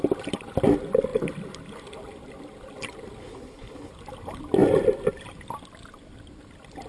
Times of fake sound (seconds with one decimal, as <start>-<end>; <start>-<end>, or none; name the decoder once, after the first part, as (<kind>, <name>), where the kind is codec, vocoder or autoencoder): 3.2-3.9 (codec, HILCodec)